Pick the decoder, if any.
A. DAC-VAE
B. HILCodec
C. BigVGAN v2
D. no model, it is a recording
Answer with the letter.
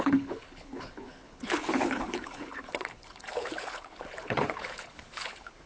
B